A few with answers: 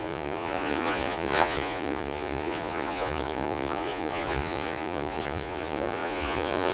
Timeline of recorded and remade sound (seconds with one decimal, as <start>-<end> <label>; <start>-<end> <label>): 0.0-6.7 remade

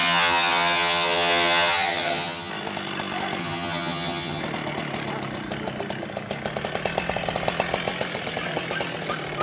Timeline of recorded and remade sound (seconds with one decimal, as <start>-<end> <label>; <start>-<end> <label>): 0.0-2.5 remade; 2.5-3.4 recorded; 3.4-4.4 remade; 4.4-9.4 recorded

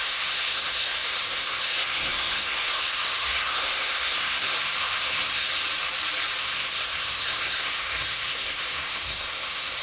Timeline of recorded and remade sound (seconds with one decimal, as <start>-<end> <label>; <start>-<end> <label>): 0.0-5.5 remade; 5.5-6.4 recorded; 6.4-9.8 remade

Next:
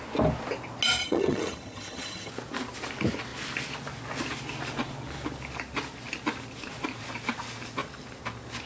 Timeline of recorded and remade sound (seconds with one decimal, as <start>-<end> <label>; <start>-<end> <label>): 0.0-1.0 recorded; 1.0-2.3 remade; 2.3-8.7 recorded

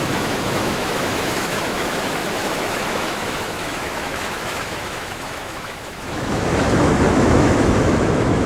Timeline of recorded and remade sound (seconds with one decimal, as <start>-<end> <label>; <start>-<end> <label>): 0.0-8.5 remade